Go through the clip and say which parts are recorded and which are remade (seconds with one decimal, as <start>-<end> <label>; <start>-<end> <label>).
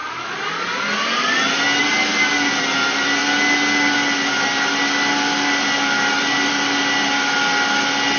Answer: 0.0-8.2 recorded